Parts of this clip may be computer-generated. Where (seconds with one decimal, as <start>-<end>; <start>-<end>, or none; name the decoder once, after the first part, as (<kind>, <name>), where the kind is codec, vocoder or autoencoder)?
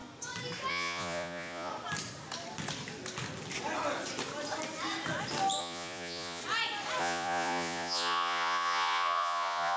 0.7-1.7 (vocoder, Vocos); 5.6-6.4; 7.0-9.8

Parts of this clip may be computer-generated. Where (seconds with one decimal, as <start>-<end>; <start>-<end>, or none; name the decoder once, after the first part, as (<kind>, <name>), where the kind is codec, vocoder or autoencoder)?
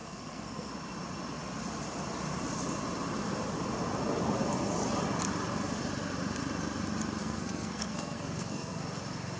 0.0-0.7 (codec, SNAC); 7.2-8.8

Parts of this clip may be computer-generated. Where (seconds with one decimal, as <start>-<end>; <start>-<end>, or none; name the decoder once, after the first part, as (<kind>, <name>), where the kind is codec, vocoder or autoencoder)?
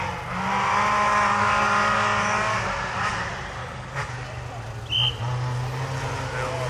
1.1-2.7 (codec, DAC); 3.6-4.1